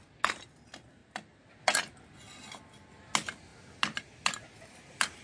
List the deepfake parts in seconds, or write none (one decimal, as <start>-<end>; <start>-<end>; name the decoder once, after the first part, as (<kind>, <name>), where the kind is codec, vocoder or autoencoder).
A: none